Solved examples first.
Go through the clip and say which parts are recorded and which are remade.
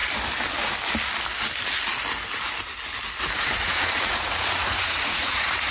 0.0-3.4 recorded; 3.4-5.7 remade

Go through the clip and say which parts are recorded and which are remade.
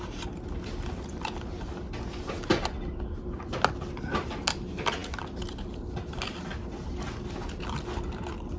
0.0-8.6 recorded